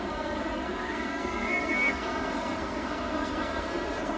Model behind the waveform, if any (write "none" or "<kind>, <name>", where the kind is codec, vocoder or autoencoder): codec, SNAC